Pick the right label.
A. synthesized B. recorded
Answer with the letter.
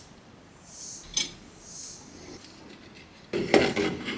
B